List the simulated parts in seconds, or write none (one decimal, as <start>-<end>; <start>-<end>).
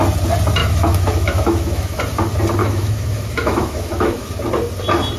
0.6-2.0; 2.6-4.3